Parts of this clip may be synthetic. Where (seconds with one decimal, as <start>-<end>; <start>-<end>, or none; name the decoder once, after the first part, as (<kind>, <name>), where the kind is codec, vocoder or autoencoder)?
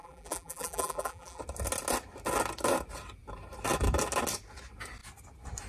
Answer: 0.0-1.4 (vocoder, BigVGAN v2)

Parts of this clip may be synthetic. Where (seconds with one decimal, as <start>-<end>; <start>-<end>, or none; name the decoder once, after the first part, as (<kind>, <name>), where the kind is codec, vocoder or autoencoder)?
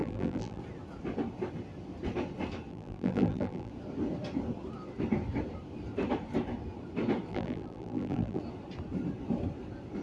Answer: 0.0-0.6 (vocoder, BigVGAN v2); 2.7-3.7; 7.3-8.4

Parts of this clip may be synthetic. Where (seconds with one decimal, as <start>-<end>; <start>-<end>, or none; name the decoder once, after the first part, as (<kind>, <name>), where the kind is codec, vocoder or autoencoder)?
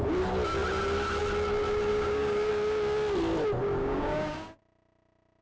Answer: 1.9-2.5 (codec, DAC); 3.8-4.6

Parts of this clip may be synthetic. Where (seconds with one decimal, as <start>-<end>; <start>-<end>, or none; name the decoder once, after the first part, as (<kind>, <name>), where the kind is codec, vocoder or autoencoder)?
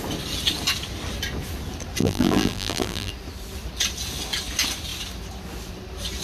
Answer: 2.0-3.1 (vocoder, BigVGAN v2)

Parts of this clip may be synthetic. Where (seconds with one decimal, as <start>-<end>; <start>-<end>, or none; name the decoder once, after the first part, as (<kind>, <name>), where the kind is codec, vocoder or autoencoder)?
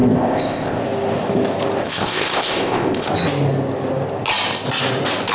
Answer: 0.0-0.8 (codec, ZipCodec); 1.8-3.1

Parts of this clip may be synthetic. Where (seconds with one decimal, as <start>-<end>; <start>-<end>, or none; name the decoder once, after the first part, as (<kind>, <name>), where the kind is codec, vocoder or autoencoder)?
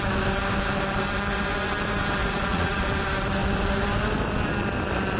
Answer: 2.2-2.8 (vocoder, Vocos)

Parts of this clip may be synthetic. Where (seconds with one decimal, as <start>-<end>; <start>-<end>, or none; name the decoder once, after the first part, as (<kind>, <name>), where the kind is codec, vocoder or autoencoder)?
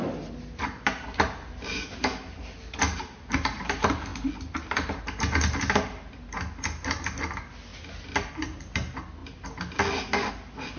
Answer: none